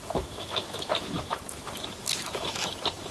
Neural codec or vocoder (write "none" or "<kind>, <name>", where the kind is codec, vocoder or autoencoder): autoencoder, DAC-VAE